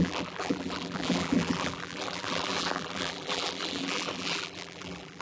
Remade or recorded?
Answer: remade